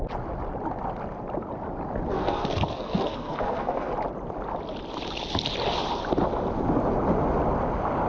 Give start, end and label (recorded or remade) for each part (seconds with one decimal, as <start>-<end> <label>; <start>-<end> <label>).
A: 0.0-2.1 recorded; 2.1-3.9 remade; 3.9-8.1 recorded